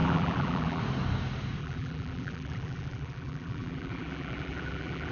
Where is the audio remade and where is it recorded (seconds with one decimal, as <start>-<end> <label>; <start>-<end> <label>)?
0.0-0.8 remade; 0.8-1.6 recorded; 1.6-5.1 remade